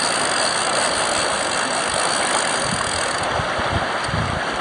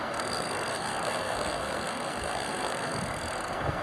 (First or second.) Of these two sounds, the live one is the first